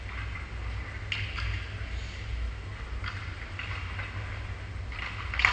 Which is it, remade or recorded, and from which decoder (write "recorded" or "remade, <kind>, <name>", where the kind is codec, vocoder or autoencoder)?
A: recorded